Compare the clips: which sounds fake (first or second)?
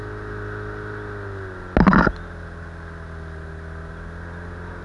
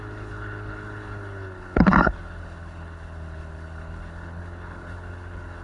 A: second